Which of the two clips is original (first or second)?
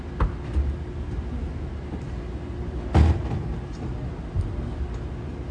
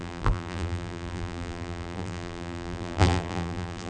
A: first